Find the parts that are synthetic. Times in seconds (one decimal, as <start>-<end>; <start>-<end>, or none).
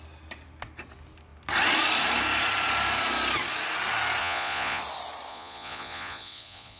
4.2-4.8; 5.3-6.8